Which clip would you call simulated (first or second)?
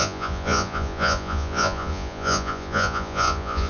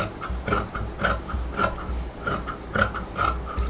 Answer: first